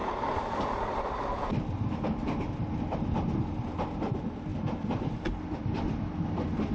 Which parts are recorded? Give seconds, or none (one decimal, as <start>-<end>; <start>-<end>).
1.5-4.5; 5.1-6.7